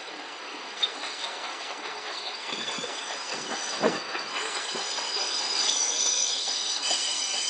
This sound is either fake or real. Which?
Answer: fake